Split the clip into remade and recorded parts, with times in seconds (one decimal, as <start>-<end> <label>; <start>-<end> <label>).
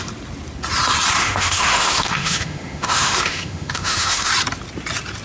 0.0-1.2 recorded; 1.2-4.3 remade; 4.3-5.2 recorded